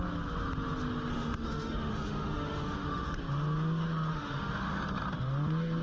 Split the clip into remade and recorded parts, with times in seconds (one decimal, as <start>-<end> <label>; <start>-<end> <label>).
0.0-1.1 recorded; 1.1-3.2 remade; 3.2-4.1 recorded; 4.1-4.7 remade; 4.7-5.8 recorded